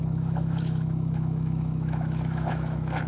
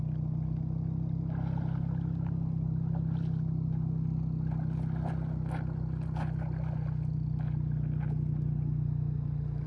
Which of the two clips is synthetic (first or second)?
first